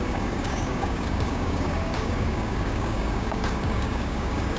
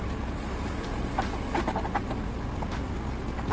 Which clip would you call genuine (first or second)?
second